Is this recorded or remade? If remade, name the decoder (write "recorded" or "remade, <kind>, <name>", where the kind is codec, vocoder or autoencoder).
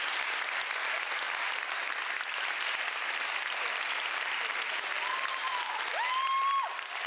recorded